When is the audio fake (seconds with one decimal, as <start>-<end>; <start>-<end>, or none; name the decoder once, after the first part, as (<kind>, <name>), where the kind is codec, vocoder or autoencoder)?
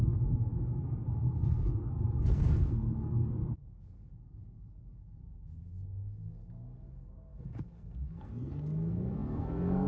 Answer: 0.0-9.9 (codec, SNAC)